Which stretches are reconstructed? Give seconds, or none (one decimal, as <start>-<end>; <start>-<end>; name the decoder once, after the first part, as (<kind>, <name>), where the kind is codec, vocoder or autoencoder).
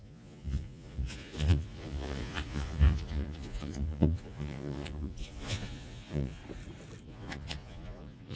0.0-6.4 (vocoder, Vocos); 7.0-8.4